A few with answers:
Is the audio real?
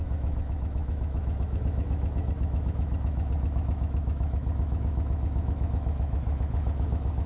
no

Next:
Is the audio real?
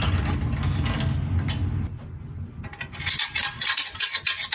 yes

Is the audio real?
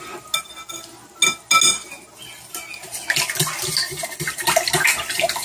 yes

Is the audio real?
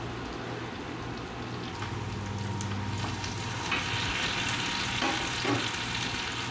yes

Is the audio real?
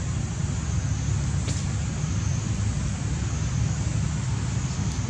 yes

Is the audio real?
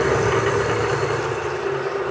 yes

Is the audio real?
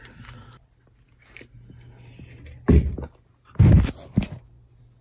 yes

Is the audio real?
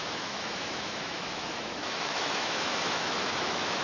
no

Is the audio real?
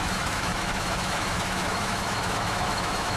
no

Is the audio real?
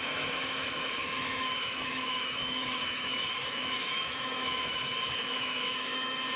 no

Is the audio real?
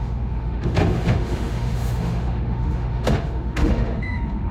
no